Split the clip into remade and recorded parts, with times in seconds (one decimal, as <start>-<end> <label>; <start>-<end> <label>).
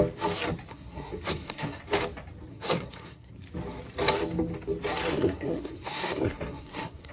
0.0-0.7 recorded; 0.7-1.8 remade; 1.8-2.5 recorded; 2.5-3.3 remade; 3.3-5.1 recorded; 5.1-7.1 remade